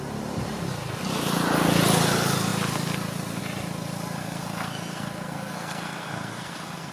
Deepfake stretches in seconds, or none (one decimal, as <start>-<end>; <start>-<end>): 4.2-6.9